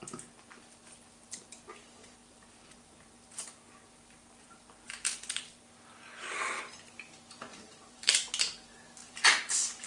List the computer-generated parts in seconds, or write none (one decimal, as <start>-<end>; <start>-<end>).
1.8-5.5; 7.5-8.3; 9.0-9.9